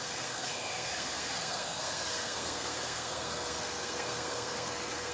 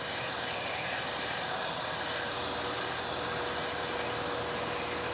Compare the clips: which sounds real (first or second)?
second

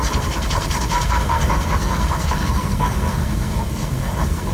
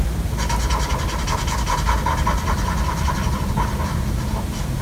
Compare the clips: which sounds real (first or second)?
second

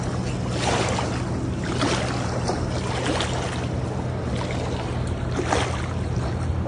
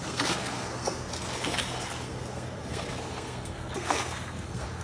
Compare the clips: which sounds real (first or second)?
first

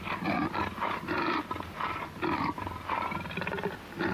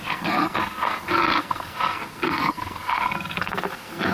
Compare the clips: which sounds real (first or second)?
first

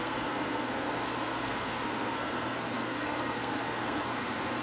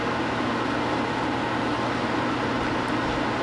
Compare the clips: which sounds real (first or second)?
second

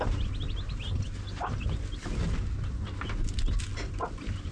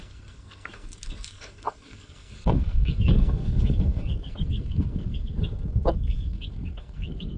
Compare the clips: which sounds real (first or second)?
first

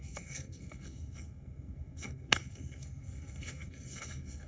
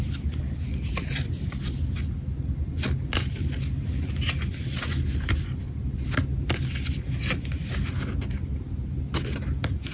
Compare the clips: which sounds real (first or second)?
second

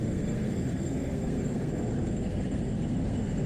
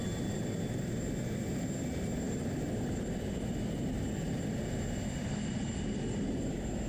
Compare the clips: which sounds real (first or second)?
second